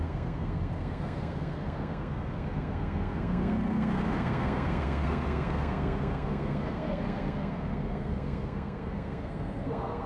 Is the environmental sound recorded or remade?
remade